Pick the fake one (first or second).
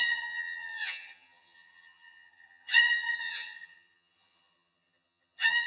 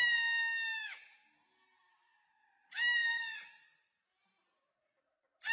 first